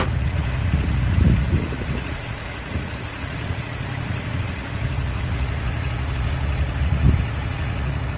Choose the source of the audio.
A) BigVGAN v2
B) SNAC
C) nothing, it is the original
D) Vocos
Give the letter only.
D